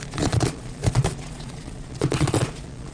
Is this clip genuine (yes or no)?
no